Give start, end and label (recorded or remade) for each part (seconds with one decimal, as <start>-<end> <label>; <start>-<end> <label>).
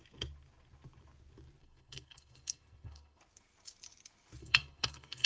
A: 0.0-1.6 recorded; 1.6-3.2 remade; 3.2-4.4 recorded; 4.4-5.3 remade